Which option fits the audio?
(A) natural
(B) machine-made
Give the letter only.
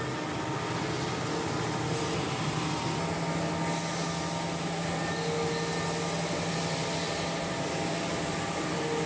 A